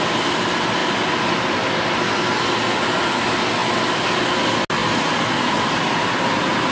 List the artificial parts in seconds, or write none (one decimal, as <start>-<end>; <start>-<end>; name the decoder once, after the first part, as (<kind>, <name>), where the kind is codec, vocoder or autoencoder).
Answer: none